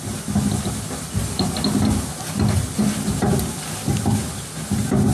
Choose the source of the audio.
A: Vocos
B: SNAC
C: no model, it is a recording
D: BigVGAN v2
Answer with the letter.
C